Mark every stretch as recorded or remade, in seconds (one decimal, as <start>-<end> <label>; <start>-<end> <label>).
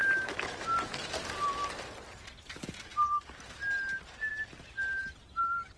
0.0-5.8 recorded